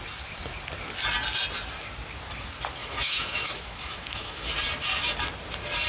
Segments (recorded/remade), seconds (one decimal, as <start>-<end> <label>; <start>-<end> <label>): 0.0-2.8 recorded; 2.8-4.5 remade; 4.5-5.9 recorded